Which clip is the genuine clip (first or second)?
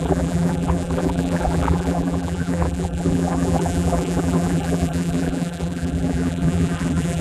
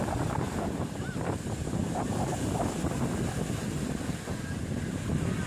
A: second